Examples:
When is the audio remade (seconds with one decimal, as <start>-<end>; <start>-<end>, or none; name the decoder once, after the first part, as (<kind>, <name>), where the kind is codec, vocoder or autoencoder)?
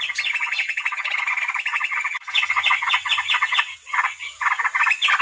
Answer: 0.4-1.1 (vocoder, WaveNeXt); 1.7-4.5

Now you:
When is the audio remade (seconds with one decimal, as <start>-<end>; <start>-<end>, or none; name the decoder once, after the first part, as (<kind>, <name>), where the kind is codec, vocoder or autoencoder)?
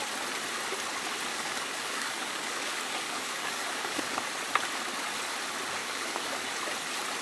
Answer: 1.3-4.2 (codec, DAC); 5.8-6.5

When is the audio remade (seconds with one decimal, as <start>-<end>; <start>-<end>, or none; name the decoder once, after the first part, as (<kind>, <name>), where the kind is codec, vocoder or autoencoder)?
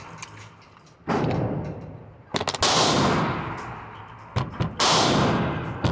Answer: none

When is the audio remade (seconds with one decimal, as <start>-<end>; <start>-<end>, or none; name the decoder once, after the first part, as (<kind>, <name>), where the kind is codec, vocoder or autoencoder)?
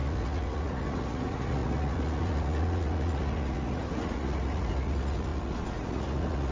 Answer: 0.0-6.5 (vocoder, Vocos)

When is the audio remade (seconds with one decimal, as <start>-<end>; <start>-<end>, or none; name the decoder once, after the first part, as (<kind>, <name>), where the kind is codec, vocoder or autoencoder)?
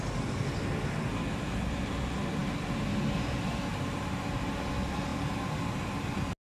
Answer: none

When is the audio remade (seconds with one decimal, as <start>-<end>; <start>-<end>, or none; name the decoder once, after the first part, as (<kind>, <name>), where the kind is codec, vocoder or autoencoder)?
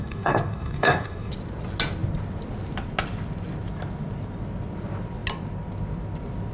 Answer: 0.0-1.3 (codec, DAC)